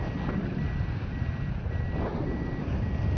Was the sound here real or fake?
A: real